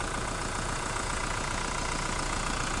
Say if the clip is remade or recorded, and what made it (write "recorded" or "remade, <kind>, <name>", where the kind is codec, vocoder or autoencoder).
remade, vocoder, Vocos